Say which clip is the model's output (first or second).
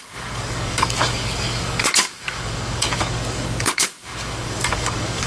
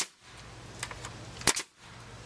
first